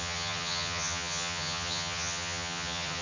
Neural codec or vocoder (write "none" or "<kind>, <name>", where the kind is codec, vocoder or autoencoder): vocoder, HiFi-GAN